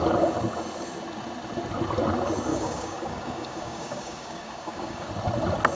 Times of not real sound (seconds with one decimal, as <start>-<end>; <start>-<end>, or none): 2.5-5.1